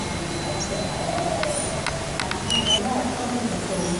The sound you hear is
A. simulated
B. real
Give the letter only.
B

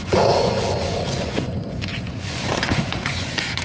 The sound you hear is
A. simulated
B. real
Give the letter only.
A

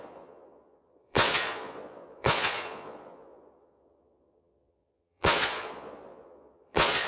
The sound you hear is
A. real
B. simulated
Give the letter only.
B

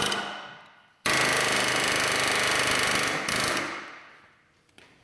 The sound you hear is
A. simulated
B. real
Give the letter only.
B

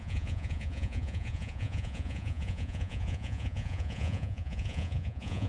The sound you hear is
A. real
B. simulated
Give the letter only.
B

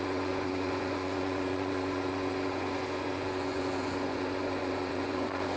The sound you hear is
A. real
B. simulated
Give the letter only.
B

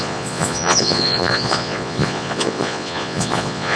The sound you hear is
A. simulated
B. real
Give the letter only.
A